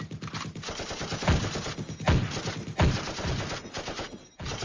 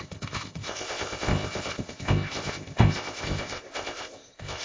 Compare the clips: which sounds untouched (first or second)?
first